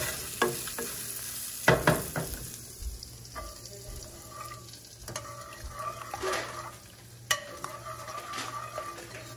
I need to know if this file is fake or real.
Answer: real